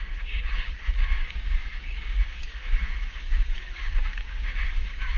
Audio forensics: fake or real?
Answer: fake